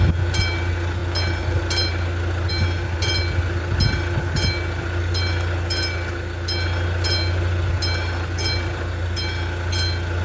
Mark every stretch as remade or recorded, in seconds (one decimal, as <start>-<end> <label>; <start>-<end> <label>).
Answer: 0.0-10.2 recorded

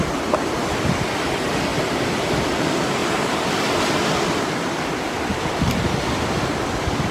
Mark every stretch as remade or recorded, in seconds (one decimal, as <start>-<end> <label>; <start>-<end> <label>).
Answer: 0.0-7.1 recorded

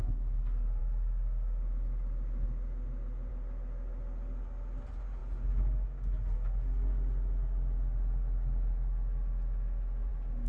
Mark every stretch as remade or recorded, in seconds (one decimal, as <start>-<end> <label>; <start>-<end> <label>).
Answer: 0.0-10.5 recorded

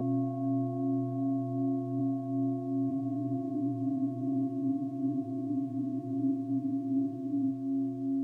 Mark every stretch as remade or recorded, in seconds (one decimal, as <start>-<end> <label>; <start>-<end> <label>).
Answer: 0.0-2.9 recorded; 2.9-7.5 remade; 7.5-8.2 recorded

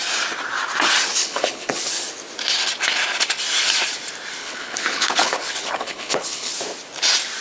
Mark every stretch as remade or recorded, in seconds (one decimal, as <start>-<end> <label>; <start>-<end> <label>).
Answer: 0.0-1.2 recorded; 1.2-1.8 remade; 1.8-4.4 recorded; 4.4-6.5 remade; 6.5-7.4 recorded

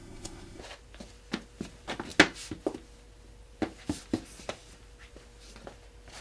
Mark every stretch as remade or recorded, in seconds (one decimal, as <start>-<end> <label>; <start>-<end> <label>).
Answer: 0.0-0.6 remade; 0.6-6.2 recorded

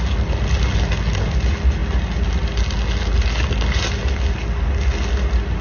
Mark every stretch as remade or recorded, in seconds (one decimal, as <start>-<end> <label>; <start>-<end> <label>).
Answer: 0.0-5.6 recorded